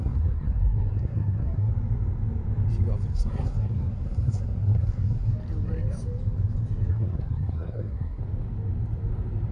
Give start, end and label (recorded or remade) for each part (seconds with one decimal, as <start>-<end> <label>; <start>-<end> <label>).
0.0-1.7 remade; 1.7-3.1 recorded; 3.1-5.3 remade; 5.3-6.9 recorded; 6.9-8.2 remade; 8.2-9.5 recorded